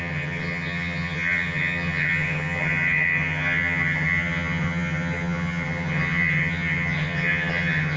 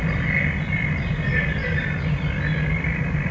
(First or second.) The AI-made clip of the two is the first